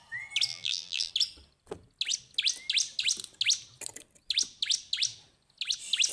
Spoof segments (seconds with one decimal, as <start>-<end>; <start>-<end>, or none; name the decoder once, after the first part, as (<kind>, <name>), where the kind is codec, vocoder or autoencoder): 0.5-1.1 (vocoder, BigVGAN v2)